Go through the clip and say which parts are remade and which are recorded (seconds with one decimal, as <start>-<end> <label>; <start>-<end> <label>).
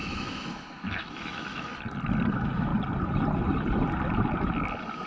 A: 0.0-1.7 remade; 1.7-2.3 recorded; 2.3-2.7 remade; 2.7-5.1 recorded